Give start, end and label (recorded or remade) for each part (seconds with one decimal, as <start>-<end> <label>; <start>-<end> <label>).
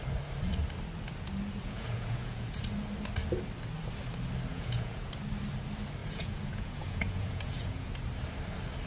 0.0-1.6 recorded; 1.6-2.6 remade; 2.6-4.5 recorded; 4.5-5.1 remade; 5.1-6.0 recorded; 6.0-7.9 remade; 7.9-8.9 recorded